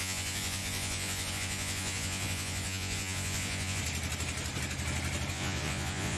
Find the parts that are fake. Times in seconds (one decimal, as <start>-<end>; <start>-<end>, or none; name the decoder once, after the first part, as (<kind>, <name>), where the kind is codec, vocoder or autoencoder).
0.0-3.8 (vocoder, Vocos); 5.3-6.2